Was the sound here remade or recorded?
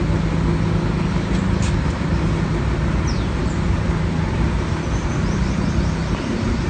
recorded